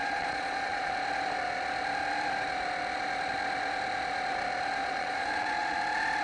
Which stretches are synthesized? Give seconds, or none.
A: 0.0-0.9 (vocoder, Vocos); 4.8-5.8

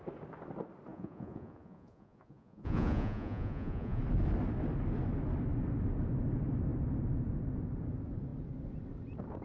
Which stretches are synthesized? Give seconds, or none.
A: 0.9-4.0 (vocoder, Vocos)

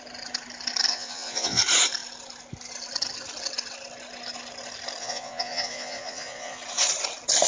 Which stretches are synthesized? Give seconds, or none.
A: 0.9-1.6 (vocoder, Vocos); 5.0-6.6

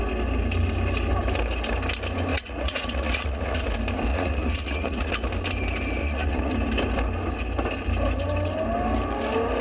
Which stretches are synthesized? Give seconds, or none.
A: 2.3-3.6 (vocoder, Vocos); 4.1-5.1; 6.0-6.5